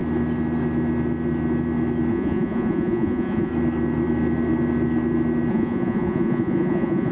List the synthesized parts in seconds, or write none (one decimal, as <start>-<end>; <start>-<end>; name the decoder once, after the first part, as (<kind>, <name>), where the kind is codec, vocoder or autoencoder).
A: 2.1-3.5 (vocoder, Vocos); 5.5-7.1